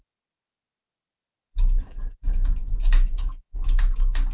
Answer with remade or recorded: remade